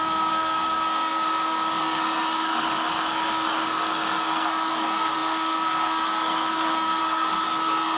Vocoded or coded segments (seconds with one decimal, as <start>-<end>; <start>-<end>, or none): 0.0-8.0